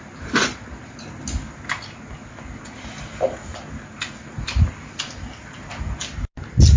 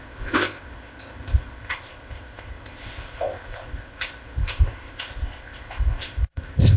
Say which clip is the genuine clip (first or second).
first